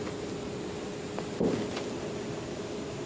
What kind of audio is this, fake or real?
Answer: real